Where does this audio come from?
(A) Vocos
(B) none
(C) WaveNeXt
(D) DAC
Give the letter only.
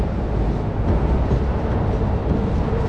B